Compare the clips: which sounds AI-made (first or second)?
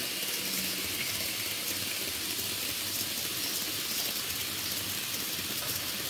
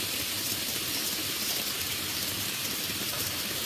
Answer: second